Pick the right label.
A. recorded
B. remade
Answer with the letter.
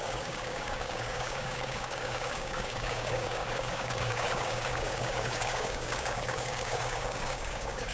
B